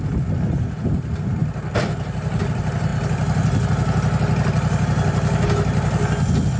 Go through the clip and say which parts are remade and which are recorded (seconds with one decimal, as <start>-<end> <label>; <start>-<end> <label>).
0.0-6.6 recorded